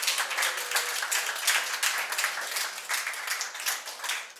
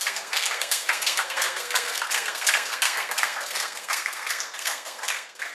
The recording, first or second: first